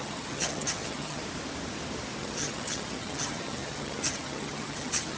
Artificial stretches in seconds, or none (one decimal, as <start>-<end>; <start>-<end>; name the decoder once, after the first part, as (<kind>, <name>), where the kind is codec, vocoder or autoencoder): 0.0-1.2 (vocoder, HiFi-GAN); 2.2-5.2